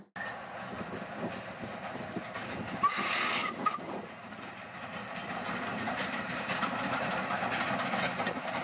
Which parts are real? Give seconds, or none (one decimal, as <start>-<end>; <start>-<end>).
0.0-5.2; 7.3-8.6